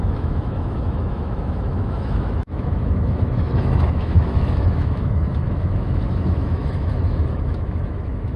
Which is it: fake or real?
fake